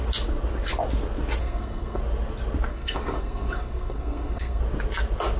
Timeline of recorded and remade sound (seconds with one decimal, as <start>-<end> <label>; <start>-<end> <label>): 0.0-1.4 recorded; 1.4-2.0 remade; 2.0-2.7 recorded; 2.7-4.6 remade; 4.6-5.4 recorded